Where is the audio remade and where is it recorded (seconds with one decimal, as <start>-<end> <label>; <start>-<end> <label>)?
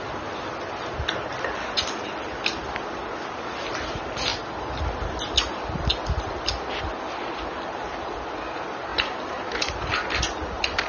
0.0-10.9 recorded